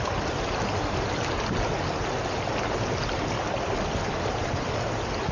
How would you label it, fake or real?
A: real